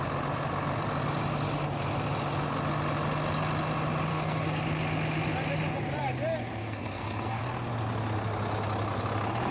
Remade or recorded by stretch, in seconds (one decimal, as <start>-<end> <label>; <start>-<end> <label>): 0.0-4.1 recorded; 4.1-4.6 remade; 4.6-6.6 recorded; 6.6-7.4 remade; 7.4-9.5 recorded